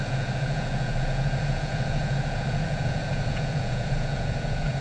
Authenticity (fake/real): fake